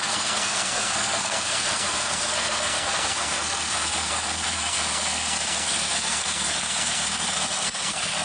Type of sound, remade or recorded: remade